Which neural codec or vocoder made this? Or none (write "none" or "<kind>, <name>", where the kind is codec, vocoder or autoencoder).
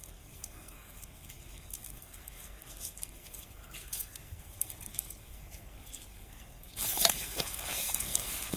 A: codec, SNAC